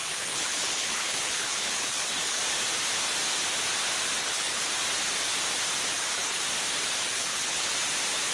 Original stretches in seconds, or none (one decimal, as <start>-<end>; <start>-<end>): 2.4-4.2; 4.7-5.9; 6.4-7.0; 7.7-8.3